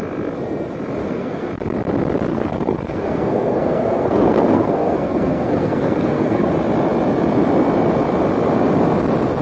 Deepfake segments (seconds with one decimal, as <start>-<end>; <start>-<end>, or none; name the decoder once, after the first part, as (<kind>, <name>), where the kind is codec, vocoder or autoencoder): 1.0-1.5 (codec, SNAC); 2.3-6.5